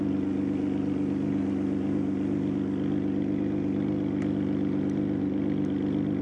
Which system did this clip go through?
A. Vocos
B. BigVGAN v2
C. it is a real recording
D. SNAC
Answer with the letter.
C